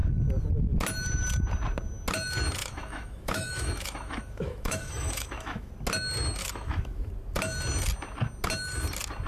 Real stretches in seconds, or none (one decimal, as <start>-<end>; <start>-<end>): 0.0-2.6; 5.7-6.4; 7.1-9.3